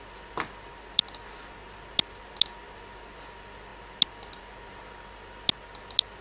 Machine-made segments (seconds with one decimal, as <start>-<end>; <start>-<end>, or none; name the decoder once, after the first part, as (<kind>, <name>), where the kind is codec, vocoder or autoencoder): none